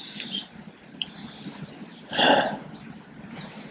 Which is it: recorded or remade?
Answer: recorded